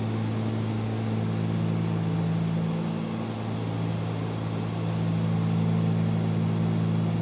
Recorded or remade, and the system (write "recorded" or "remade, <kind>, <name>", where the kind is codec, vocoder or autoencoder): recorded